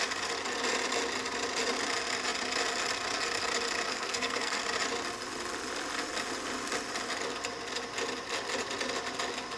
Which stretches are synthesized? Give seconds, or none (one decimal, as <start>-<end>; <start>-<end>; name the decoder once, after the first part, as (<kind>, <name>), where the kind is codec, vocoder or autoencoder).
3.9-4.6 (codec, SNAC)